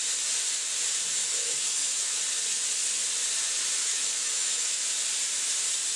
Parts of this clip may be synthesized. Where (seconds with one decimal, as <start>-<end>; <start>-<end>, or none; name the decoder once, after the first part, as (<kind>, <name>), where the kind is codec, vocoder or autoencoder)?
1.2-2.2 (autoencoder, DAC-VAE); 3.8-4.7